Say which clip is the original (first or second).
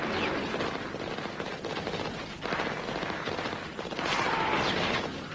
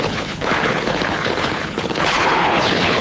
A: first